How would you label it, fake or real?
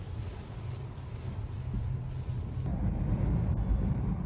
real